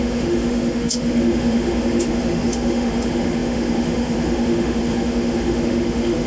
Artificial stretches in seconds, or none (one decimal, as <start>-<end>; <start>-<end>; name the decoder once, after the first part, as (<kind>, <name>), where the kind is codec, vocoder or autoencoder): 0.0-6.3 (autoencoder, DAC-VAE)